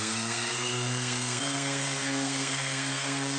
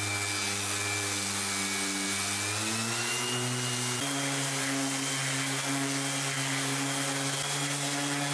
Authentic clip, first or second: second